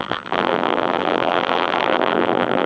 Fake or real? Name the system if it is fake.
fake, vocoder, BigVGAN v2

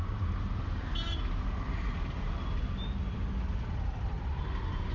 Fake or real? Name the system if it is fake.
real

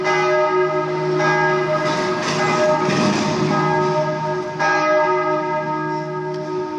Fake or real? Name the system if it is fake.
real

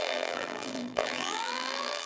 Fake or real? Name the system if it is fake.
fake, vocoder, BigVGAN v2